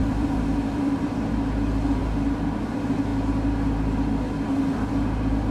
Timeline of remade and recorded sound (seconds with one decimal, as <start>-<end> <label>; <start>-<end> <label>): 0.0-1.3 remade; 1.3-2.0 recorded; 2.0-2.6 remade; 2.6-5.5 recorded